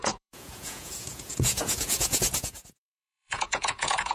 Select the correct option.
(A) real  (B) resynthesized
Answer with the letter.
B